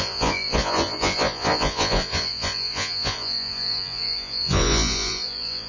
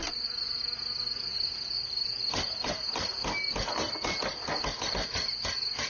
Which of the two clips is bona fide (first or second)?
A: second